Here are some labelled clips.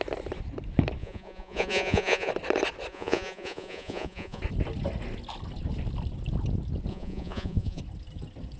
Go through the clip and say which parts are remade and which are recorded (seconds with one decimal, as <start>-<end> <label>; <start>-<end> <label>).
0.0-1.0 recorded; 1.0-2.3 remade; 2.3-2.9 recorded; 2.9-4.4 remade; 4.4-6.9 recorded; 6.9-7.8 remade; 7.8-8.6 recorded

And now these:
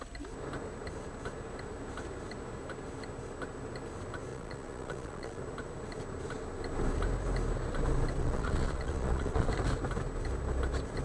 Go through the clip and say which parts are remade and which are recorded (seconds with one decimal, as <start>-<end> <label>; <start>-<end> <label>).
0.0-4.3 recorded; 4.3-5.4 remade; 5.4-8.2 recorded; 8.2-9.5 remade; 9.5-11.0 recorded

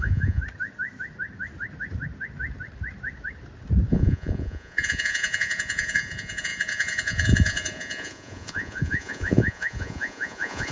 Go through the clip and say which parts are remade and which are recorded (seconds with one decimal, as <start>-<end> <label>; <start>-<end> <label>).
0.0-0.4 remade; 0.4-3.9 recorded; 3.9-10.7 remade

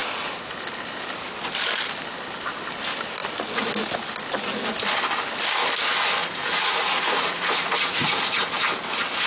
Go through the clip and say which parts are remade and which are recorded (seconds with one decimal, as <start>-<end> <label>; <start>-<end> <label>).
0.0-6.2 recorded; 6.2-8.4 remade; 8.4-9.3 recorded

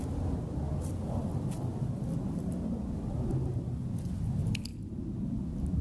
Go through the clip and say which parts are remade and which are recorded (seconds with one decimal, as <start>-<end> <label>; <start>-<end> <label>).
0.0-5.8 recorded

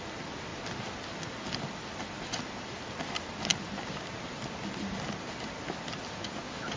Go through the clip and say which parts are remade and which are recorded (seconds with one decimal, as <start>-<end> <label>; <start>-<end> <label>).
0.0-6.8 recorded

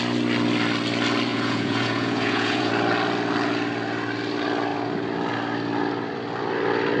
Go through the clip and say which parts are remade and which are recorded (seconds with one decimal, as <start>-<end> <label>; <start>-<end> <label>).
0.0-1.3 recorded; 1.3-2.7 remade; 2.7-7.0 recorded